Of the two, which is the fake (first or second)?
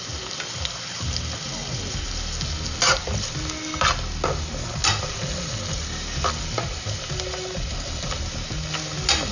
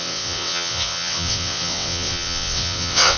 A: second